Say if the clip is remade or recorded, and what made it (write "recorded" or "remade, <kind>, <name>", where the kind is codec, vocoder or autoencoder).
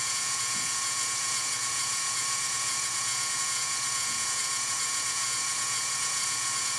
remade, vocoder, Vocos